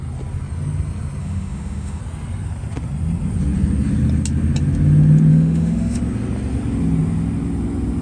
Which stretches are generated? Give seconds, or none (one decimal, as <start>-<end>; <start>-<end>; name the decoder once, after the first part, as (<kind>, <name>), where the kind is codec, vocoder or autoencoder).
1.2-2.0 (autoencoder, DAC-VAE); 5.3-6.0